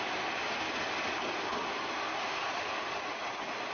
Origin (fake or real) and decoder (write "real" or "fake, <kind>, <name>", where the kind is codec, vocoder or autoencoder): real